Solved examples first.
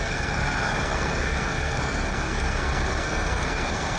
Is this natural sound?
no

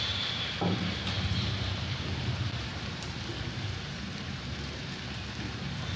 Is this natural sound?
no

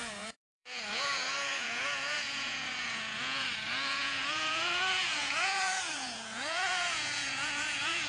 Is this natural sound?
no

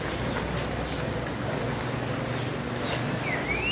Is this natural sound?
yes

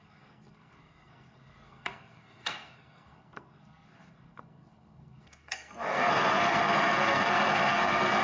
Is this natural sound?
no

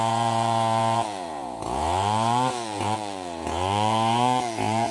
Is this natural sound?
no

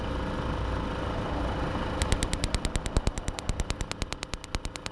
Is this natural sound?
yes